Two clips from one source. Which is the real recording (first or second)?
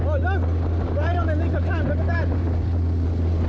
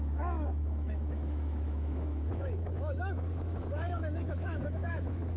first